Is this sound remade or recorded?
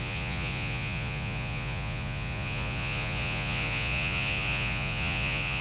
remade